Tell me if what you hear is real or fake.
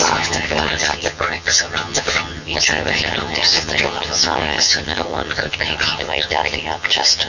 fake